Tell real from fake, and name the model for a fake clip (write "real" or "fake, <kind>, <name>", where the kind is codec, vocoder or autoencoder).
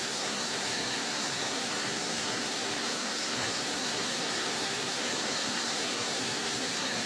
fake, codec, SNAC